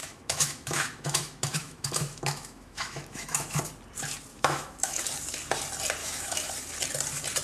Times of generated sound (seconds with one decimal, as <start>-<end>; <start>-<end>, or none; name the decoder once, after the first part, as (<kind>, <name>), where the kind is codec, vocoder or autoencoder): 0.0-3.6 (autoencoder, DAC-VAE); 4.3-5.0; 6.0-6.5